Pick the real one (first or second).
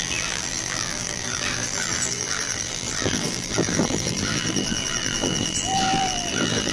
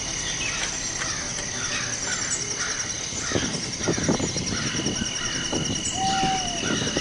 second